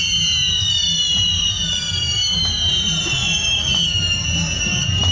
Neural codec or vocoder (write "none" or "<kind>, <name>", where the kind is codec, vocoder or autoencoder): vocoder, BigVGAN v2